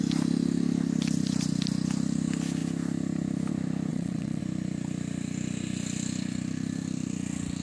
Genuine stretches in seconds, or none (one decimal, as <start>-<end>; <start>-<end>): 0.0-3.9; 4.4-7.6